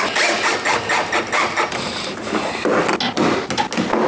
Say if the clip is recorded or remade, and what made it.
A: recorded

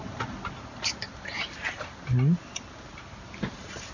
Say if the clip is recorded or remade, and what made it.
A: recorded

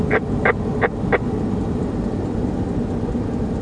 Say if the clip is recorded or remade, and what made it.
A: recorded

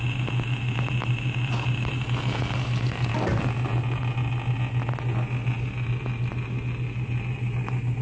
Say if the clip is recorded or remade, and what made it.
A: recorded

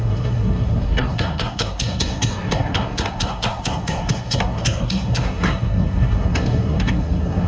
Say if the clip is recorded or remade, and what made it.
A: remade, codec, SNAC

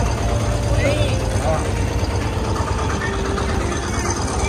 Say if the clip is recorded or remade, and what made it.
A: recorded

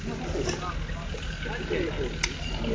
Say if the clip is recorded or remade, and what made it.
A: recorded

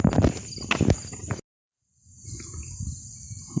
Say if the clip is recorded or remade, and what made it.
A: recorded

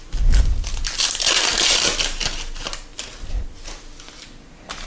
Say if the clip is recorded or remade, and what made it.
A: recorded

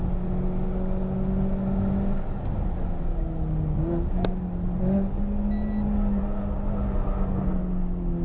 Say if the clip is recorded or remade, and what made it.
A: recorded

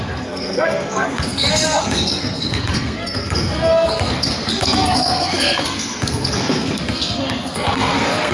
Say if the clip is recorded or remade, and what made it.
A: remade, codec, SNAC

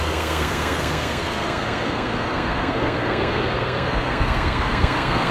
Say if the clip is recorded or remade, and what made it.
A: remade, codec, SNAC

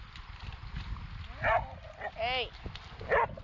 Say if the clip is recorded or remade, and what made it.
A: recorded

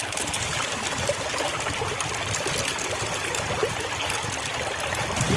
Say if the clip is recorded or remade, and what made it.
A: recorded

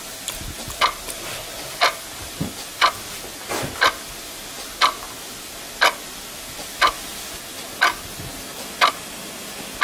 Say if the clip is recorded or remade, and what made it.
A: recorded